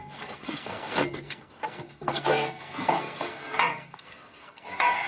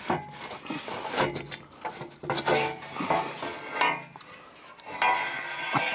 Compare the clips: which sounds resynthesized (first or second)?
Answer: first